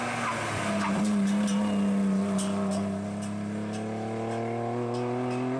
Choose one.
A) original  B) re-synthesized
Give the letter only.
A